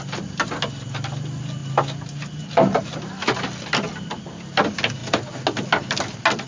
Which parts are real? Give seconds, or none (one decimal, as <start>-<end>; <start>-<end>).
0.0-6.5